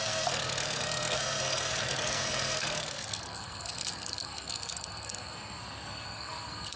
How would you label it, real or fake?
fake